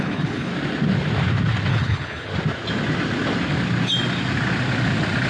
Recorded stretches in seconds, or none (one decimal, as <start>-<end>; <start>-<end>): 0.5-1.7; 2.3-5.3